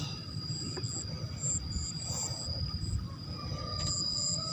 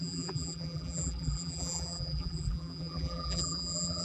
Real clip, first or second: first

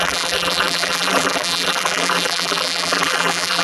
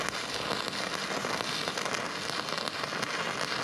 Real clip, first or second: second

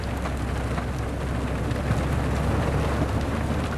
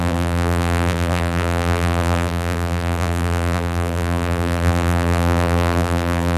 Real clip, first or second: first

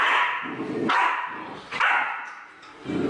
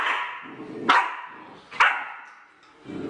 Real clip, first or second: second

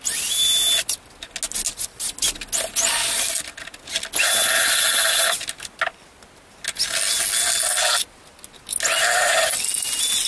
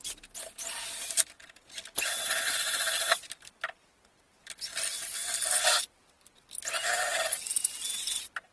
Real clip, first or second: first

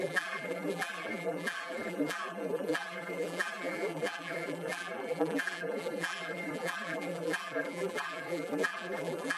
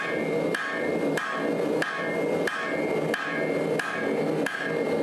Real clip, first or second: second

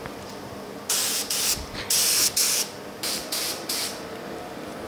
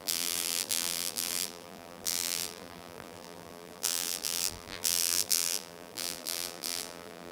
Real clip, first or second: first